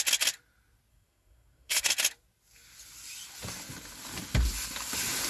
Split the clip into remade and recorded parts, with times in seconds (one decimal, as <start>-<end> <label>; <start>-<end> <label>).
0.0-0.9 recorded; 0.9-1.9 remade; 1.9-5.3 recorded